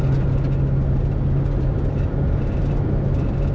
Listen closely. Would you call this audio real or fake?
real